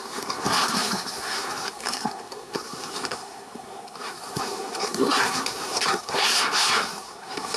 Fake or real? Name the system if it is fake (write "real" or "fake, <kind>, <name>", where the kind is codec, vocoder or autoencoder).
fake, codec, SNAC